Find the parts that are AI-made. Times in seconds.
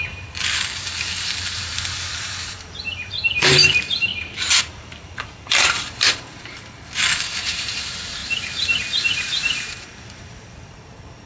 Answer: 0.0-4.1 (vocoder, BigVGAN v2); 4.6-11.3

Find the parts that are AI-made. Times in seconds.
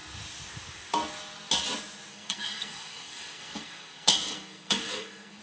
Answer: 2.1-5.4 (codec, SNAC)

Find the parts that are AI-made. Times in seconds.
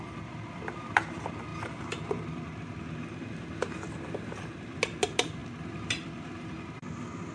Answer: none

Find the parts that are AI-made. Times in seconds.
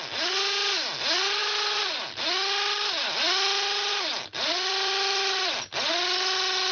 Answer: 1.4-2.2 (vocoder, BigVGAN v2); 3.9-5.6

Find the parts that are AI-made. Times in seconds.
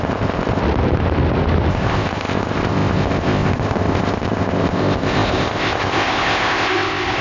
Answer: 0.0-0.6 (codec, ZipCodec); 1.7-7.2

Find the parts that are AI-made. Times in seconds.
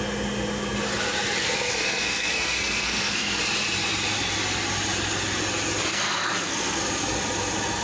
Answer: 1.4-3.4 (codec, SNAC); 5.9-6.8